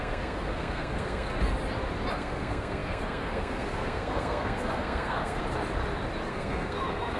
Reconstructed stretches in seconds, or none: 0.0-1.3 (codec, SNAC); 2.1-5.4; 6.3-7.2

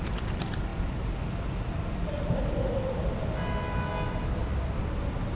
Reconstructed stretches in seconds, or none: none

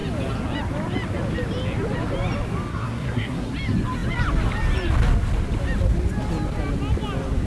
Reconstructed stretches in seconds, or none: 2.7-3.5 (codec, SNAC)

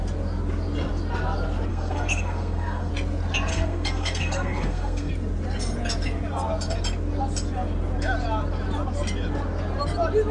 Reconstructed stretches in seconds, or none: 1.7-2.9 (codec, SNAC); 3.5-5.1

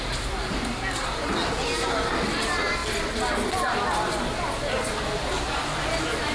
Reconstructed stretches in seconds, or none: none

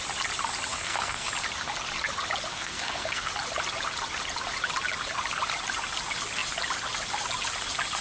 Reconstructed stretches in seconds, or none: 0.7-1.3 (codec, SNAC); 2.5-3.3